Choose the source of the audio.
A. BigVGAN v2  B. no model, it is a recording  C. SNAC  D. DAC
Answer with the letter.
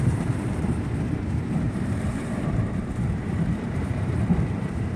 A